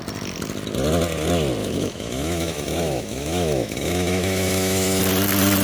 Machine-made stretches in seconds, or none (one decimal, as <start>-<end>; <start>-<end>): 1.6-5.0